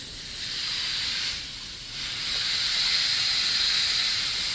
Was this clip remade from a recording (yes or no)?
no